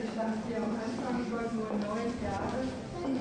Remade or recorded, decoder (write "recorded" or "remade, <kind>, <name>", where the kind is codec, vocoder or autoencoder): recorded